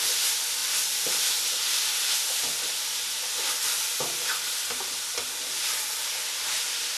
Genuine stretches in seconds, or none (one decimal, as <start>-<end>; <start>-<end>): 0.0-0.6; 4.4-7.0